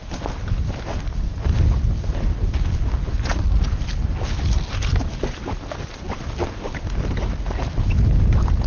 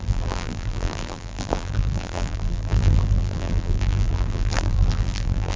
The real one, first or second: first